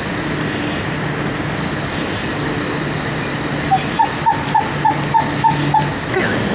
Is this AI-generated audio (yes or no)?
no